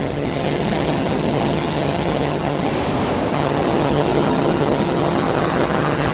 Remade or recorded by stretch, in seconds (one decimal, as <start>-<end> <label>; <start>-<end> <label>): 0.0-2.7 remade; 2.7-3.3 recorded; 3.3-6.1 remade

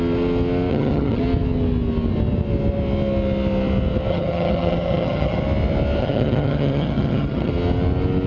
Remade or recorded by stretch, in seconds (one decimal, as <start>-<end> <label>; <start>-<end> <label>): 0.0-0.7 recorded; 0.7-1.2 remade; 1.2-4.1 recorded; 4.1-5.4 remade; 5.4-6.0 recorded; 6.0-7.5 remade; 7.5-8.3 recorded